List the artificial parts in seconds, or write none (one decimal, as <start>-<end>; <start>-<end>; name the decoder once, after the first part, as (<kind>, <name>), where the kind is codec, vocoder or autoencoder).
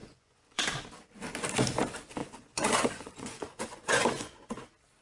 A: 0.0-0.6 (vocoder, Vocos); 2.2-4.5